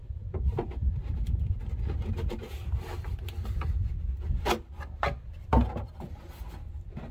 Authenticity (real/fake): real